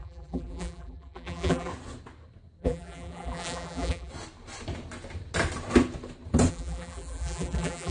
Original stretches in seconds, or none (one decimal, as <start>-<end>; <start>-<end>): 1.7-2.6; 4.1-6.5